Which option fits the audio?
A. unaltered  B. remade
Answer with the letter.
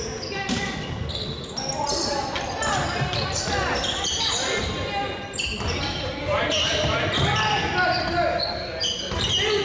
A